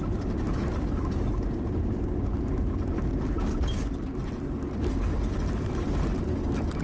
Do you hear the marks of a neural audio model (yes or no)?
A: no